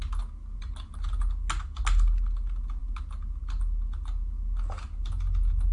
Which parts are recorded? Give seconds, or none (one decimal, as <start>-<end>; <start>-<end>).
0.0-5.7